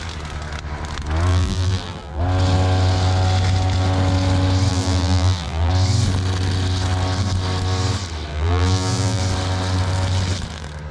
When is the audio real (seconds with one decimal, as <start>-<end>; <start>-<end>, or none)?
0.0-1.3; 2.2-4.7; 5.7-8.3; 9.2-10.9